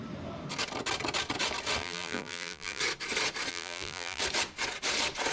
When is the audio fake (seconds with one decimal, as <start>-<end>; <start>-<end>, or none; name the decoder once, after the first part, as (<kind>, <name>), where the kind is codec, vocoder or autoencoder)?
1.8-2.8 (vocoder, BigVGAN v2); 3.5-4.2